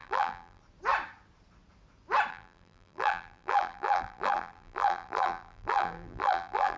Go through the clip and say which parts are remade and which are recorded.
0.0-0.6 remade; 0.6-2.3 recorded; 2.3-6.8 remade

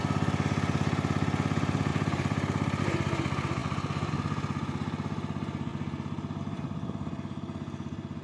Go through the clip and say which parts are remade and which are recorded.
0.0-1.9 recorded; 1.9-2.8 remade; 2.8-8.2 recorded

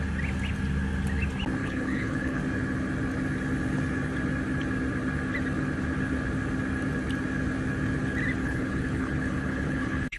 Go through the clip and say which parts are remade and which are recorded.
0.0-1.6 recorded; 1.6-2.4 remade; 2.4-8.4 recorded; 8.4-10.2 remade

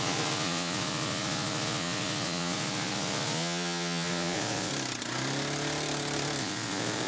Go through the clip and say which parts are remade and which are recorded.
0.0-4.7 remade; 4.7-6.4 recorded; 6.4-7.1 remade

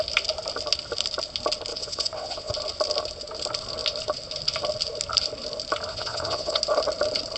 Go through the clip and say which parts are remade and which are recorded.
0.0-1.7 recorded; 1.7-2.5 remade; 2.5-5.9 recorded; 5.9-6.6 remade; 6.6-7.4 recorded

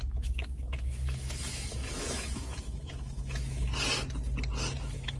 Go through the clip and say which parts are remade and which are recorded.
0.0-3.7 remade; 3.7-4.8 recorded; 4.8-5.2 remade